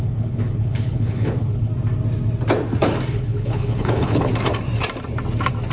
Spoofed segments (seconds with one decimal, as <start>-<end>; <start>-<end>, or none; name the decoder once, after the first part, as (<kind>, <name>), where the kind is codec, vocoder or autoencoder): 0.0-1.7 (codec, HILCodec); 3.1-4.3